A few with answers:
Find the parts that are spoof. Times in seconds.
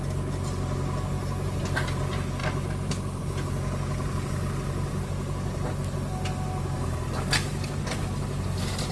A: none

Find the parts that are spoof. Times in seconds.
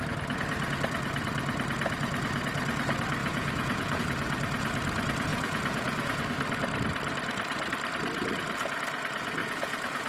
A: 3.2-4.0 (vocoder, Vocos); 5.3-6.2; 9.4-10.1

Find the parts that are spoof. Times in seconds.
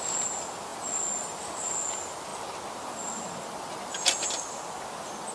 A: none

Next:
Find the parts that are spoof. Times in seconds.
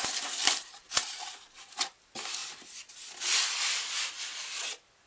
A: 0.6-1.6 (vocoder, Vocos)